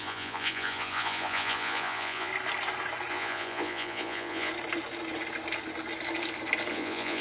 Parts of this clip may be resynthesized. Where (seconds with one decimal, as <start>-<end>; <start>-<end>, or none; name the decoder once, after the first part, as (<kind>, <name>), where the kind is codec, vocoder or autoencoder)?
0.0-2.3 (vocoder, Vocos); 3.1-4.5; 6.7-7.2